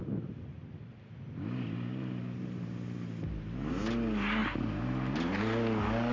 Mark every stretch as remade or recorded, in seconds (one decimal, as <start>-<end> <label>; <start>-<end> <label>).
0.0-6.1 recorded